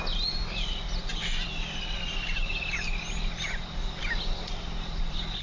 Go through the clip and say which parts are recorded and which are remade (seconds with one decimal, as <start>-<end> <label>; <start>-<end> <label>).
0.0-5.4 recorded